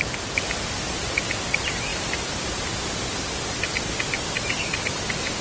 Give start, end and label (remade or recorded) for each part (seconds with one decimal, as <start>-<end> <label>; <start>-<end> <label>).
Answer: 0.0-5.4 recorded